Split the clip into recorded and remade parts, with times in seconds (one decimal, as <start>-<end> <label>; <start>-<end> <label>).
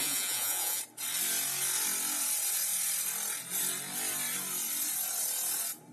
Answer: 0.0-0.8 remade; 0.8-5.9 recorded